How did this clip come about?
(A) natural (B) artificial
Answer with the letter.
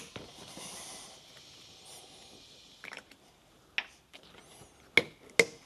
A